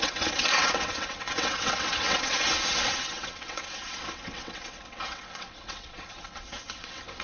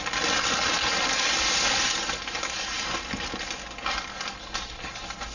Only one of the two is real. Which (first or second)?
second